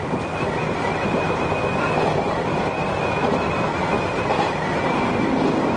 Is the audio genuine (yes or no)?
yes